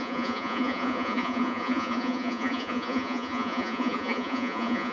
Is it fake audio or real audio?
fake